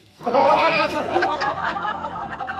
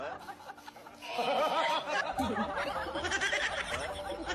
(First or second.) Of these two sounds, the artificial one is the first